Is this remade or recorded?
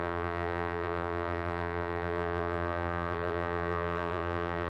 remade